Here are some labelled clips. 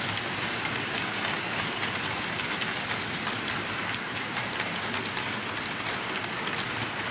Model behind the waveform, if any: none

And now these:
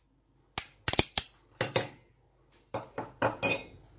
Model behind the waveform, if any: none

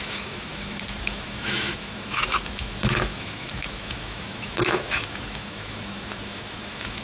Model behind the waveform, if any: autoencoder, DAC-VAE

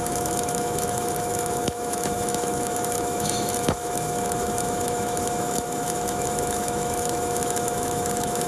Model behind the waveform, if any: autoencoder, DAC-VAE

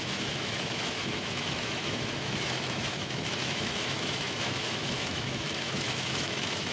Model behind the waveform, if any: autoencoder, DAC-VAE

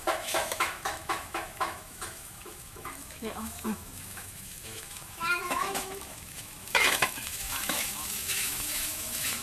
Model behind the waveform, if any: autoencoder, DAC-VAE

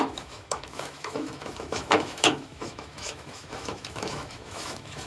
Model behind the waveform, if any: autoencoder, DAC-VAE